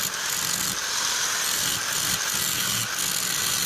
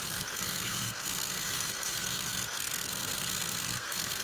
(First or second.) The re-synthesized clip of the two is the second